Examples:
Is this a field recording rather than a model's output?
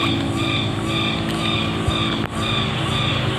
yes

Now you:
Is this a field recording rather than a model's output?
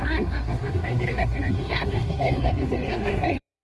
no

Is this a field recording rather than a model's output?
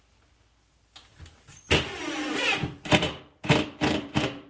yes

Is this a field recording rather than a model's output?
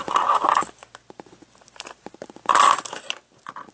yes